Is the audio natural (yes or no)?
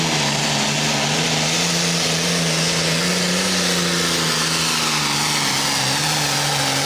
yes